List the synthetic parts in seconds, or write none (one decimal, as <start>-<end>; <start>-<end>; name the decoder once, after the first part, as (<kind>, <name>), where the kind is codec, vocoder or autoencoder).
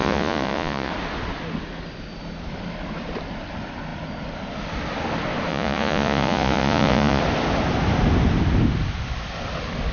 0.0-0.9 (vocoder, Vocos); 5.5-7.2